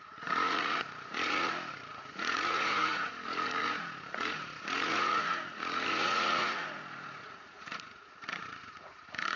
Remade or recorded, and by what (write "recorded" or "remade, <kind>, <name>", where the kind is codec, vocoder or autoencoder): remade, vocoder, Vocos